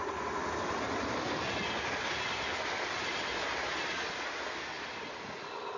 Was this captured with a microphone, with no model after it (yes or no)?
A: yes